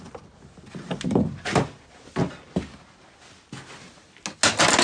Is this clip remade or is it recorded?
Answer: recorded